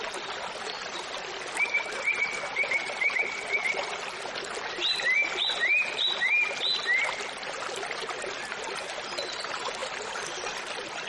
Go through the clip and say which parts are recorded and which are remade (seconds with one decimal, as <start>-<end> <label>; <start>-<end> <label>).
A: 0.0-11.1 recorded